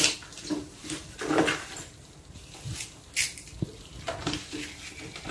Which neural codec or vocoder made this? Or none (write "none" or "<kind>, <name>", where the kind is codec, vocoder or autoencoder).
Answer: none